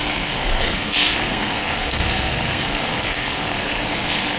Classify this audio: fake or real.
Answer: fake